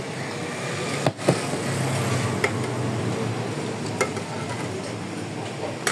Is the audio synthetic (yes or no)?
no